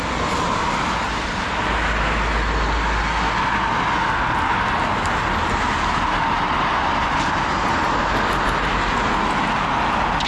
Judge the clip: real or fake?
real